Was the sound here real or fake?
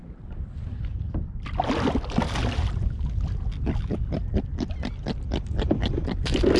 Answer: real